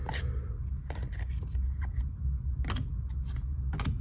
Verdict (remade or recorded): recorded